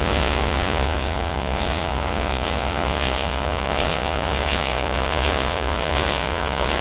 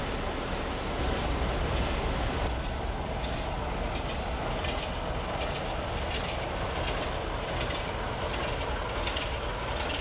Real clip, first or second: second